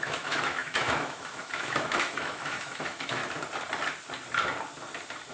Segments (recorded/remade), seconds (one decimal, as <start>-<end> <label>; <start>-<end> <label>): 0.0-3.2 remade; 3.2-5.3 recorded